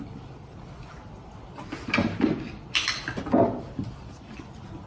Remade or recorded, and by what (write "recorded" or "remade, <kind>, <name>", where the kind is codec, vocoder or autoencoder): recorded